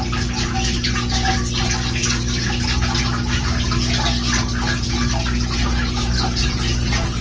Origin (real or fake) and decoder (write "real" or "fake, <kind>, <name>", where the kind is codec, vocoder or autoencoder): real